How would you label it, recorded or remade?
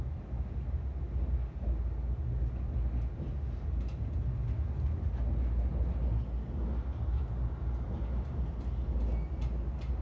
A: recorded